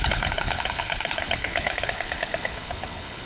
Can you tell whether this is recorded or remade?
remade